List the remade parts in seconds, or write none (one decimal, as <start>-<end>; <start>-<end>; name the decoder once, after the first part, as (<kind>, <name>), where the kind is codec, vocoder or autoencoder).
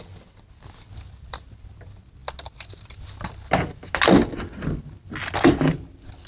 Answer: none